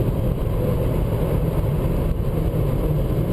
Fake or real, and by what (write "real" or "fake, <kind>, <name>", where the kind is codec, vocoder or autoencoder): real